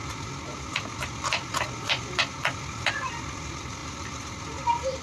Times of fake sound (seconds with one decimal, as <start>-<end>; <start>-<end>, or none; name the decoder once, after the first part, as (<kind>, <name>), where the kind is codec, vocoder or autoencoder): none